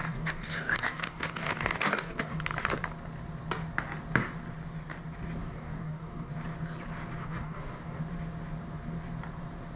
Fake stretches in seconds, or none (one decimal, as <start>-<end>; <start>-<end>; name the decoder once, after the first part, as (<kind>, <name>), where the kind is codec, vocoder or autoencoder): 0.0-2.4 (codec, DAC); 5.4-6.3; 7.2-8.0